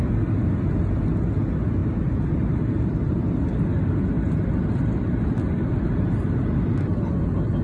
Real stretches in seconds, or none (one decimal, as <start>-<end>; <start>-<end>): 0.0-1.8; 5.7-7.6

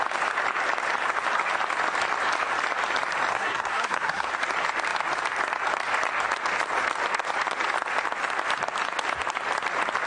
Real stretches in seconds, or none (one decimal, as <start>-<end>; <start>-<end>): 0.0-3.3; 4.3-10.1